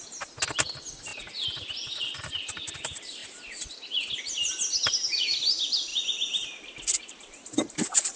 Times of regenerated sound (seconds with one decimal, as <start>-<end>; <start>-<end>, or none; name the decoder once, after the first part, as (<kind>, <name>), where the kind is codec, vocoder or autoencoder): none